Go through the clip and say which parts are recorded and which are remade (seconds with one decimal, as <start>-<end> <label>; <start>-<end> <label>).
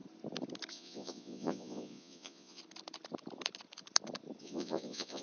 0.0-0.7 recorded; 0.7-2.6 remade; 2.6-4.4 recorded; 4.4-5.2 remade